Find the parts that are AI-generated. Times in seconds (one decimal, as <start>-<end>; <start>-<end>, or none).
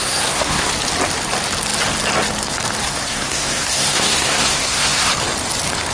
0.0-0.7; 2.8-5.1